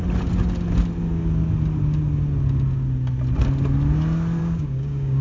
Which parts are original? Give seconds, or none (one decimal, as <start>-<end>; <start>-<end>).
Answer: 0.0-4.4